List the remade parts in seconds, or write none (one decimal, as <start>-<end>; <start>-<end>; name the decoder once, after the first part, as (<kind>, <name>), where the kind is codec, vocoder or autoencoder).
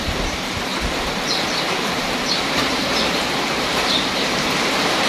0.0-0.7 (vocoder, BigVGAN v2); 1.4-5.1